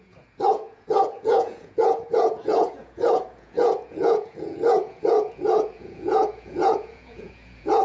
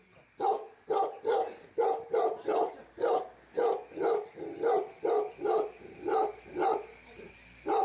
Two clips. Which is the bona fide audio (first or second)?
second